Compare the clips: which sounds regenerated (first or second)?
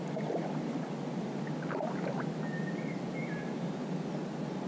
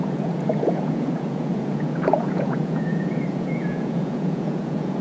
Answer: second